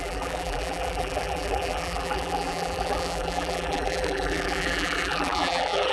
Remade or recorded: remade